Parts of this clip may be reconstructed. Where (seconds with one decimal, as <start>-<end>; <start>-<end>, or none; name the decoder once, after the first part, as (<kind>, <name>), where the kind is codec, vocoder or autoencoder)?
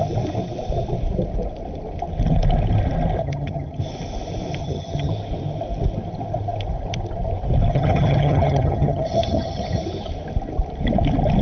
3.2-3.8 (vocoder, HiFi-GAN); 4.6-5.1; 7.7-9.8